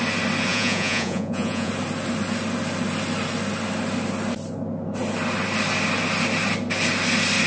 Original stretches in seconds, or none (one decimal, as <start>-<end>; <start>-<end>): 0.0-0.5; 1.7-7.5